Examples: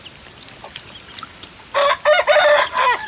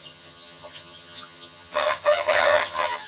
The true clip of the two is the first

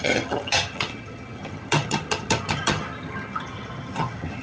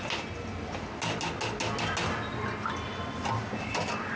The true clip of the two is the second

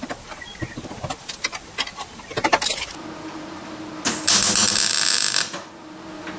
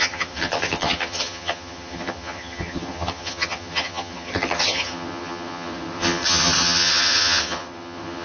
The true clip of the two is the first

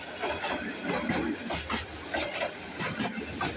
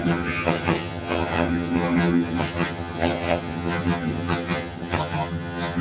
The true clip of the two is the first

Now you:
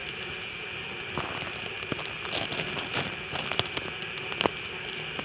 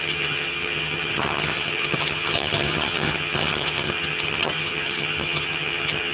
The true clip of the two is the first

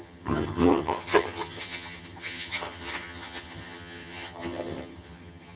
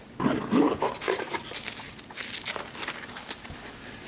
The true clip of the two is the second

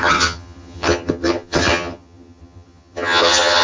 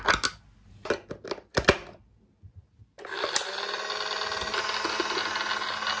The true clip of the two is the second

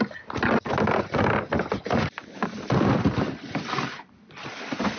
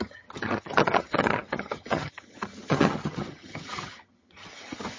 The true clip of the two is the first